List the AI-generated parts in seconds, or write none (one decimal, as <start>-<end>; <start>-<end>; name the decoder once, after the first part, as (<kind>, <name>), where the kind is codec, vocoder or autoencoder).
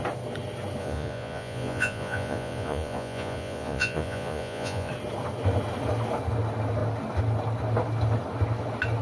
0.8-4.9 (vocoder, Vocos)